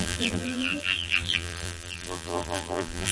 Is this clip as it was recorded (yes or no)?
no